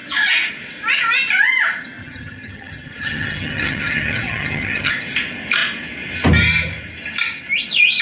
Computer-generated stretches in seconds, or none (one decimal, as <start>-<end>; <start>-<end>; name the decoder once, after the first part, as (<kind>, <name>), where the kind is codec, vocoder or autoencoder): 2.0-4.9 (vocoder, HiFi-GAN)